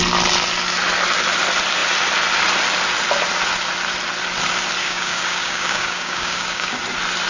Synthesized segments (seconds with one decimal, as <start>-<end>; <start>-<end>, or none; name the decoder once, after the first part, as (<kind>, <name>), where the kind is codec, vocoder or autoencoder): 4.8-6.7 (codec, DAC)

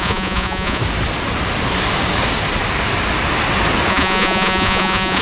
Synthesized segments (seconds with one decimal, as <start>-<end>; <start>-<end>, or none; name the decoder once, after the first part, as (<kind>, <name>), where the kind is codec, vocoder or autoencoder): 0.0-0.8 (vocoder, Vocos); 3.9-5.2